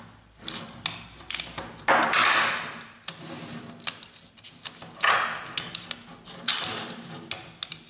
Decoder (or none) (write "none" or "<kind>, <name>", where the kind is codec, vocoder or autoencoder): none